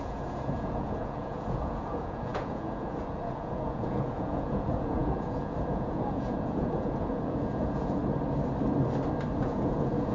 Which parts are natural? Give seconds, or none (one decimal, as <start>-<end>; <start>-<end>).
8.0-9.4